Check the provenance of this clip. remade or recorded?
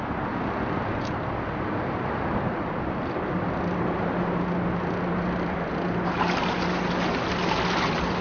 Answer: recorded